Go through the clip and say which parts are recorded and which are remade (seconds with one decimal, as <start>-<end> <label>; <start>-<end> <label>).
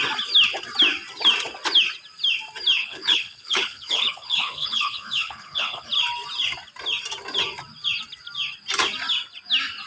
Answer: 0.0-2.8 recorded; 2.8-5.9 remade; 5.9-9.9 recorded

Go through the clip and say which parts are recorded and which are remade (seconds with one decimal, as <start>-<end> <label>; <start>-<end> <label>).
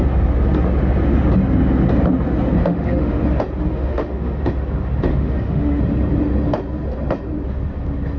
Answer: 0.0-2.6 recorded; 2.6-3.2 remade; 3.2-3.7 recorded; 3.7-4.4 remade; 4.4-5.1 recorded; 5.1-5.8 remade; 5.8-8.2 recorded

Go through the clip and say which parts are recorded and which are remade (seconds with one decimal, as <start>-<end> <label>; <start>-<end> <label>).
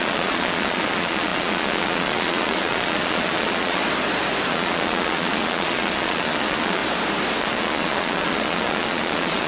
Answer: 0.0-3.8 remade; 3.8-4.5 recorded; 4.5-6.8 remade; 6.8-7.4 recorded; 7.4-9.5 remade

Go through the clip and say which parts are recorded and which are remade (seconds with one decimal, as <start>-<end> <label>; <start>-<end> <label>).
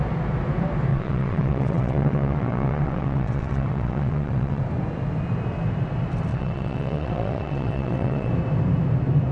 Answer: 0.0-0.9 recorded; 0.9-4.6 remade; 4.6-6.3 recorded; 6.3-8.3 remade; 8.3-9.3 recorded